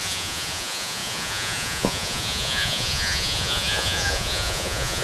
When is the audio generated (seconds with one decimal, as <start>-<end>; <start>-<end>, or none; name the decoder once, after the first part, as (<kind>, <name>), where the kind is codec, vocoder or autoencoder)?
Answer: 0.0-5.0 (vocoder, Vocos)